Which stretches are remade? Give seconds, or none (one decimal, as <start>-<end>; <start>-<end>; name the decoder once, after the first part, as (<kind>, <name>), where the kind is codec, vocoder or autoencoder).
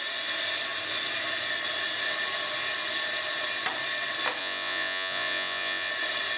4.4-5.9 (vocoder, Vocos)